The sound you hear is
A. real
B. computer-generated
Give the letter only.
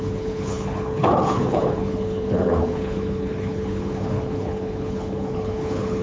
B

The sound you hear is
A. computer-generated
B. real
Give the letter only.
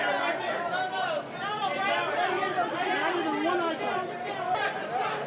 B